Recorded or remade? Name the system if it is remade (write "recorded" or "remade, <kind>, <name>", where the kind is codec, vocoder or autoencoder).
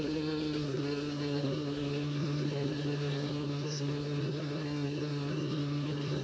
remade, codec, SNAC